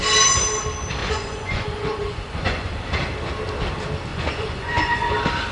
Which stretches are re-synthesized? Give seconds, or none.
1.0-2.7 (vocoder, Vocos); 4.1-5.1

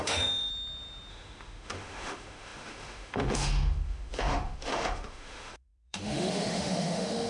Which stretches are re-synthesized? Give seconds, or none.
0.0-0.5 (autoencoder, DAC-VAE); 1.1-7.3

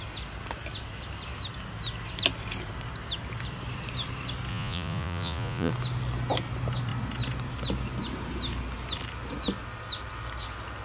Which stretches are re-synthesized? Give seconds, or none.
4.5-5.7 (vocoder, Vocos)

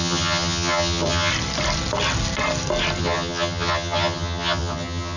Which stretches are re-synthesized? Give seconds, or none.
0.0-1.3 (vocoder, HiFi-GAN); 3.0-5.2

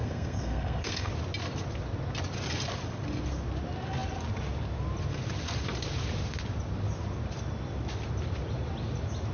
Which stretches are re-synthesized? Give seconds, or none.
0.0-1.1 (codec, SNAC)

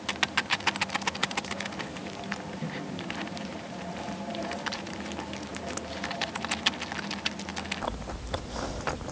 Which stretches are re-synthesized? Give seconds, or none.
1.2-5.1 (vocoder, BigVGAN v2); 5.5-6.3

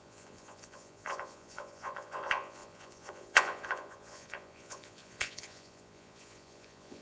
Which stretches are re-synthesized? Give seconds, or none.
0.0-7.0 (vocoder, Vocos)

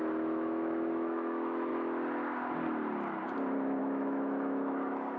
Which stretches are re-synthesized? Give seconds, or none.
0.0-1.7 (autoencoder, DAC-VAE); 3.8-5.2